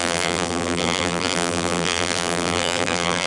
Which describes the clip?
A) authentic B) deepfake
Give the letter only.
B